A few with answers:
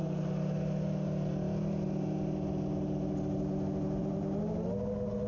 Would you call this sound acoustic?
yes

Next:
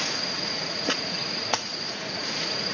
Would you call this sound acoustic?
no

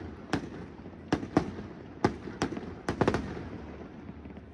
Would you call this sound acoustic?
yes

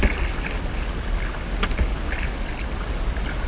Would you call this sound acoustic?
yes